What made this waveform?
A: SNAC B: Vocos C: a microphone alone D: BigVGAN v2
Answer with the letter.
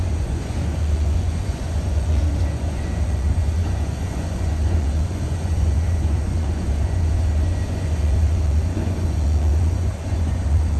B